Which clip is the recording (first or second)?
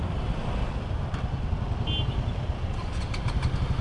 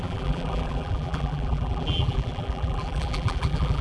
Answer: first